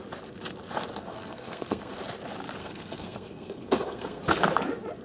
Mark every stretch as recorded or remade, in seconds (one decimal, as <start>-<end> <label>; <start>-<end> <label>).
0.0-1.1 recorded; 1.1-1.9 remade; 1.9-2.6 recorded; 2.6-4.2 remade; 4.2-5.0 recorded